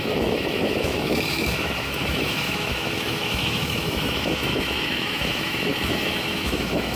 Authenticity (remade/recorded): remade